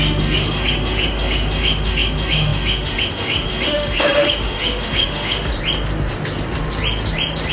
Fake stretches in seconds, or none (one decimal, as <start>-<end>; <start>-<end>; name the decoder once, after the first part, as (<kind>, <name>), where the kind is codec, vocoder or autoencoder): 0.0-5.5 (autoencoder, DAC-VAE)